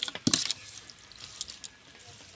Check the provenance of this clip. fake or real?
real